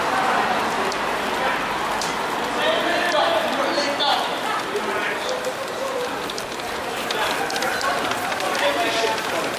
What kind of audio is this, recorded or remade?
recorded